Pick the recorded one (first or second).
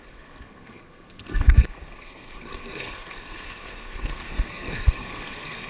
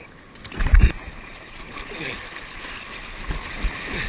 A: second